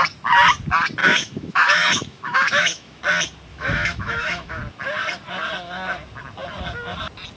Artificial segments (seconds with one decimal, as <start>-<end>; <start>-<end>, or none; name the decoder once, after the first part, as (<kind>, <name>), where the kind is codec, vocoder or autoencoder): 1.0-3.0 (autoencoder, DAC-VAE); 3.5-4.6